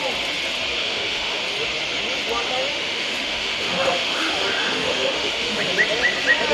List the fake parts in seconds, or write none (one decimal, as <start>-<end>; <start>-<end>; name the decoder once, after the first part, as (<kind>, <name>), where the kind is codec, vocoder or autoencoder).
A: 0.8-1.4 (autoencoder, DAC-VAE); 2.7-5.7